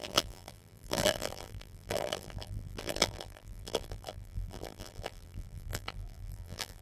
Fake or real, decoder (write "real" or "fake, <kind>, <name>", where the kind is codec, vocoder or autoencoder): fake, vocoder, BigVGAN v2